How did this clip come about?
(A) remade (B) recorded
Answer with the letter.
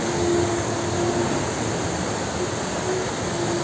B